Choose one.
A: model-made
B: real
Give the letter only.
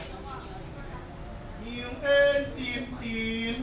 B